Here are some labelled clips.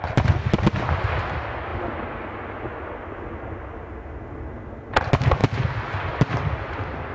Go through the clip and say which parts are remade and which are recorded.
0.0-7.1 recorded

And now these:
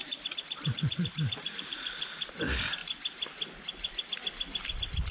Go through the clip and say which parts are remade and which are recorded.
0.0-2.3 remade; 2.3-5.1 recorded

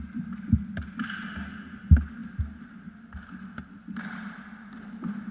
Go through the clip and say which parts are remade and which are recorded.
0.0-5.3 recorded

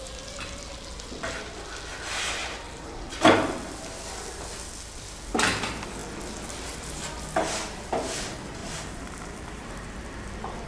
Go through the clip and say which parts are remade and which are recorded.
0.0-2.4 recorded; 2.4-3.2 remade; 3.2-8.6 recorded; 8.6-9.9 remade; 9.9-10.7 recorded